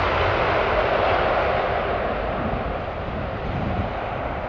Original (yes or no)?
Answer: yes